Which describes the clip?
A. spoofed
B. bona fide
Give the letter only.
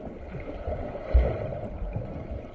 B